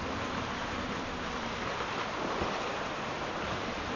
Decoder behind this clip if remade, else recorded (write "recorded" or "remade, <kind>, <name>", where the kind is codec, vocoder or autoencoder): recorded